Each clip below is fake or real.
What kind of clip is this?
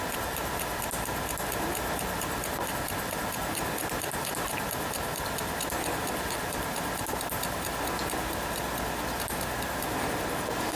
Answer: real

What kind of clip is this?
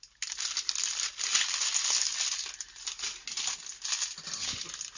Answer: real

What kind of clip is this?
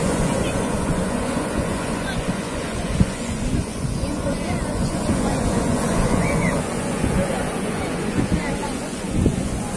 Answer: fake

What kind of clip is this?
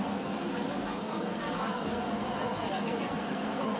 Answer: fake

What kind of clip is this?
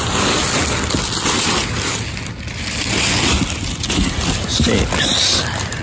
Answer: real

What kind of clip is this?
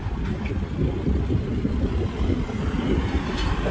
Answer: real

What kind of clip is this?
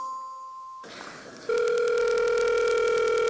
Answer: real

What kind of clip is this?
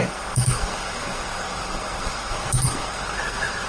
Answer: fake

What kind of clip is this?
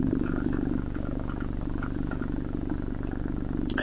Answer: real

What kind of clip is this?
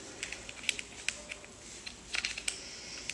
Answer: real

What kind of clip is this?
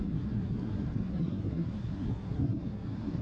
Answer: fake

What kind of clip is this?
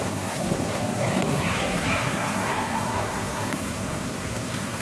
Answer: fake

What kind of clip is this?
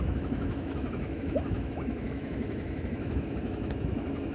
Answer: fake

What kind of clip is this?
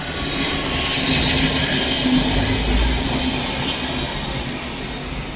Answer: real